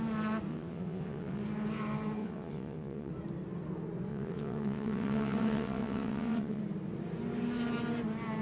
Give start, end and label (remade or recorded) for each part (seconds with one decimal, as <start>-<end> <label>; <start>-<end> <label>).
0.0-0.5 recorded; 0.5-1.4 remade; 1.4-2.2 recorded; 2.2-3.1 remade; 3.1-4.1 recorded; 4.1-6.6 remade; 6.6-8.4 recorded